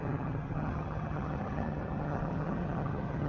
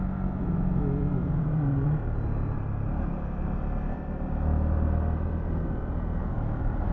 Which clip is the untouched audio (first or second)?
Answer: second